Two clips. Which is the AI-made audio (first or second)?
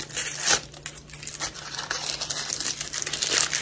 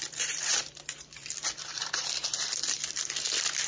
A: second